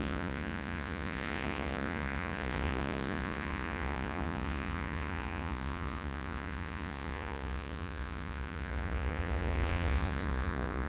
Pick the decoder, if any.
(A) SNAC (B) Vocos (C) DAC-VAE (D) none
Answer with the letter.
B